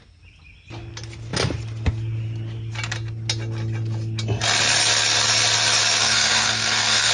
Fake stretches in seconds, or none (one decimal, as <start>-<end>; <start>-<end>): 6.0-7.1